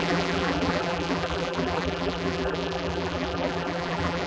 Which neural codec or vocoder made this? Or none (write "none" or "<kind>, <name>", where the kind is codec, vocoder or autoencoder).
vocoder, BigVGAN v2